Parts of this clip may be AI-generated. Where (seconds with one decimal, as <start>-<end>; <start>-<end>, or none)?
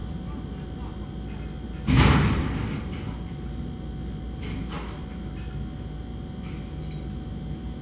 none